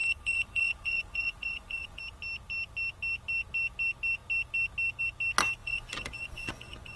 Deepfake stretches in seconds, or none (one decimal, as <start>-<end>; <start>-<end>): 0.0-2.0; 5.6-7.0